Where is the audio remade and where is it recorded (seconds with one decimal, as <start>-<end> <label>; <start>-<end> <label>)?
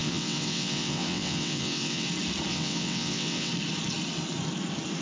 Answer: 0.0-2.1 remade; 2.1-2.5 recorded; 2.5-3.5 remade; 3.5-5.0 recorded